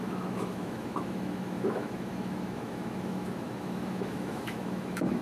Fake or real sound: fake